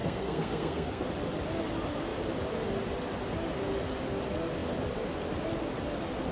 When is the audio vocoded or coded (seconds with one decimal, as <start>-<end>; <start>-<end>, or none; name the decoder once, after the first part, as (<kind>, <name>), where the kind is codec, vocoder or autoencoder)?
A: 0.0-1.0 (codec, SNAC)